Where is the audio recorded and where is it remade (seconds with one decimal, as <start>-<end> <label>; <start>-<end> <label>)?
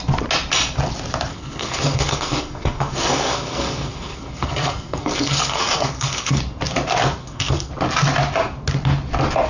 0.0-1.3 recorded; 1.3-6.4 remade; 6.4-7.2 recorded; 7.2-7.7 remade; 7.7-9.5 recorded